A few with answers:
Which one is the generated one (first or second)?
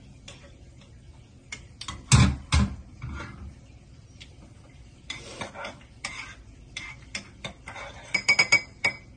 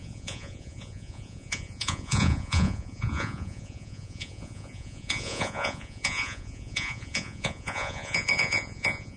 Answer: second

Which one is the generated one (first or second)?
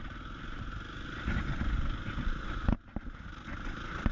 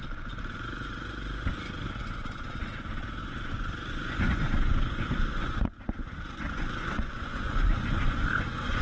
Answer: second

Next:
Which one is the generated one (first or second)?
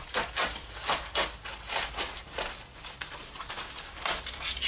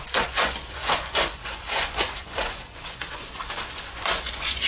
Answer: second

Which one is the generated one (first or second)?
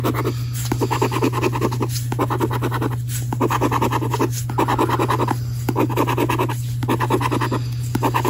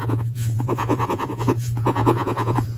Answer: second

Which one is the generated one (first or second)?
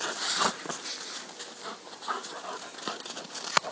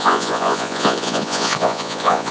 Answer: second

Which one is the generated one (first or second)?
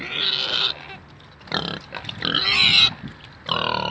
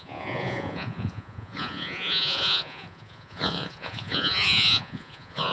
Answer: second